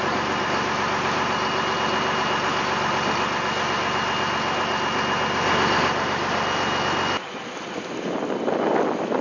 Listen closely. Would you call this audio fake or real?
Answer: real